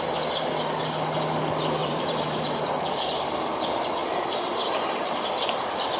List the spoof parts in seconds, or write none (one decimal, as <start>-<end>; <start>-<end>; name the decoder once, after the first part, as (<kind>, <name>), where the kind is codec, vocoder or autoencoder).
1.8-2.7 (vocoder, BigVGAN v2); 4.0-5.0